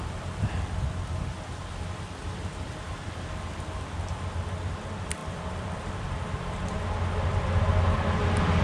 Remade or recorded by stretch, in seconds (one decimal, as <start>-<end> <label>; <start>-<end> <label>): 0.0-8.6 recorded